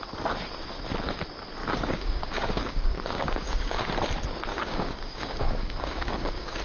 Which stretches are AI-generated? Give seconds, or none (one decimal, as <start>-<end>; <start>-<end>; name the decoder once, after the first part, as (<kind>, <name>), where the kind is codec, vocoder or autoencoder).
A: 1.6-3.9 (codec, DAC); 4.5-6.6